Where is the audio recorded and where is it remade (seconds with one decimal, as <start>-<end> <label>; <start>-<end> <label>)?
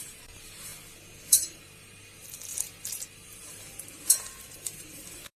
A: 0.0-0.7 remade; 0.7-1.3 recorded; 1.3-5.4 remade